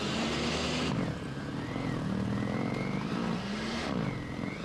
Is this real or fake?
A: real